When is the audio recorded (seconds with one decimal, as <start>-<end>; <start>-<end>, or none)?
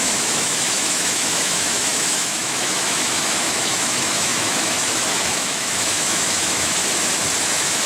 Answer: 6.8-7.4